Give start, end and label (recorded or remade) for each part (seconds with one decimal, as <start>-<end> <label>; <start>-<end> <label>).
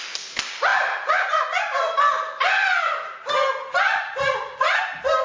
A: 0.0-5.2 recorded